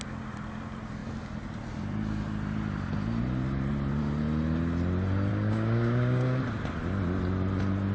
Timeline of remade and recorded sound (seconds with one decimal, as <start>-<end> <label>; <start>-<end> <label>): 0.0-5.3 recorded; 5.3-6.4 remade; 6.4-7.9 recorded